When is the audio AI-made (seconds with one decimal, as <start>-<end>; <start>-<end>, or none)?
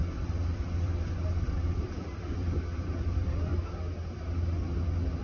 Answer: 0.0-3.5